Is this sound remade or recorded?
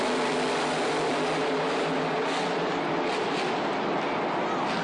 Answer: recorded